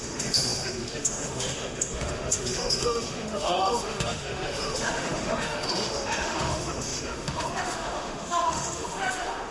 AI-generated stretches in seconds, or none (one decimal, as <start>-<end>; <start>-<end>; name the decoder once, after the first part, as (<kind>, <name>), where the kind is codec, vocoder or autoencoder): 0.0-9.5 (autoencoder, DAC-VAE)